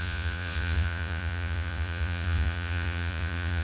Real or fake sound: fake